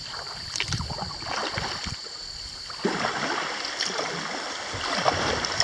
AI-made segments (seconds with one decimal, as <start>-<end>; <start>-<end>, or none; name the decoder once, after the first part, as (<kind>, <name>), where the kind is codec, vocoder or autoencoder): 0.0-0.7 (vocoder, BigVGAN v2)